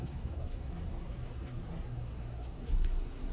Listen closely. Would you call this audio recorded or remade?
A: remade